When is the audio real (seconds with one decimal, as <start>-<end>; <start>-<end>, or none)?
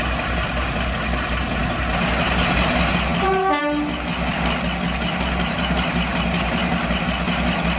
0.0-6.1; 7.0-7.8